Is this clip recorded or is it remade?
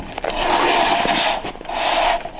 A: recorded